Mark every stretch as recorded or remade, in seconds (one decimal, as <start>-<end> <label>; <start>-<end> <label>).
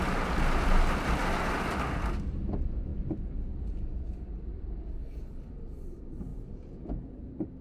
0.0-6.3 recorded; 6.3-7.1 remade; 7.1-7.6 recorded